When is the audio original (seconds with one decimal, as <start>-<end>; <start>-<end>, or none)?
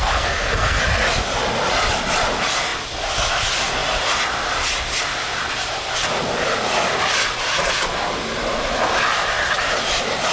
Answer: 0.8-10.3